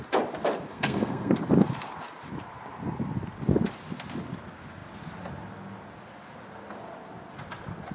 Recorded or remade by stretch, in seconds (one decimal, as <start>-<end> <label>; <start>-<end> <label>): 0.0-0.7 recorded; 0.7-1.3 remade; 1.3-7.9 recorded